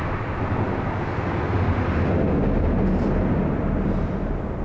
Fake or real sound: real